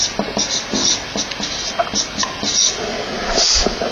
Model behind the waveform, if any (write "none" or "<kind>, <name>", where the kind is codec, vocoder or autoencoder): none